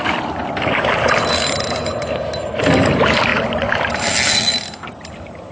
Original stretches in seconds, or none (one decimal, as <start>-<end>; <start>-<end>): 1.9-2.6; 3.3-5.0

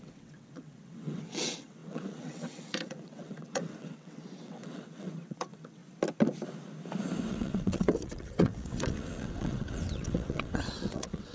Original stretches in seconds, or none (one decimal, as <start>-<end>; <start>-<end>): 5.8-7.3

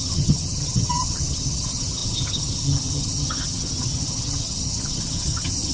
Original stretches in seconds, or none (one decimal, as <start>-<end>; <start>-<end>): none

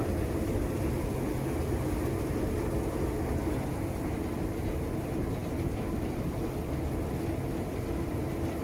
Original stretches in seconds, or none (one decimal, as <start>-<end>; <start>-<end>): 0.0-8.6

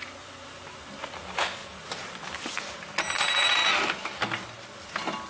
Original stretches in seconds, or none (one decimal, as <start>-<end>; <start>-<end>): 0.0-5.3

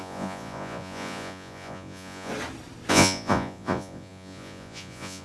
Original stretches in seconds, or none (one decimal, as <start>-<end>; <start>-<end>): 2.3-2.9

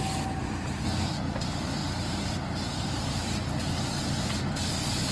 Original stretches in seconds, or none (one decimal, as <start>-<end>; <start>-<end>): 0.0-5.1

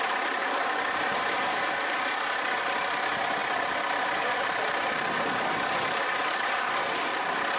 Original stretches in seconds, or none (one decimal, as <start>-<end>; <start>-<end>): 0.0-7.6